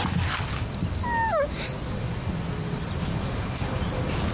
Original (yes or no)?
yes